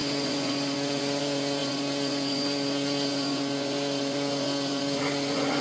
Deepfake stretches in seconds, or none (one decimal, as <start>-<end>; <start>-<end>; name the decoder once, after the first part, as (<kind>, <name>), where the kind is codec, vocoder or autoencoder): 0.0-5.6 (vocoder, Vocos)